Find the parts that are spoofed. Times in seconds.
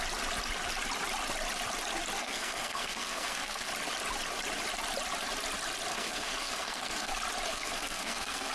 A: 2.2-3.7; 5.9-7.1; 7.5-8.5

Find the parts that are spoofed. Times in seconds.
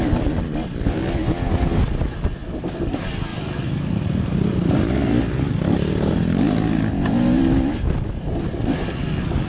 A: none